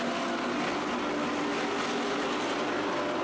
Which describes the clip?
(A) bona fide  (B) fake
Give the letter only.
A